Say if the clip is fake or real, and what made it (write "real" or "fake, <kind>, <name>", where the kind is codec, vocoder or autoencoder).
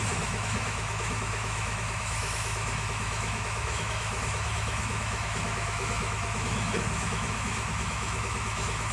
fake, autoencoder, DAC-VAE